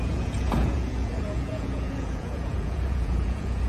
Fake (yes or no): yes